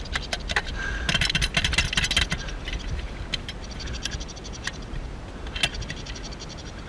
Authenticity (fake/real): real